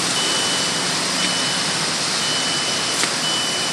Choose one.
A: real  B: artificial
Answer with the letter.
A